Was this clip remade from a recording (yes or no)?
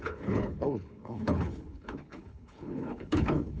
yes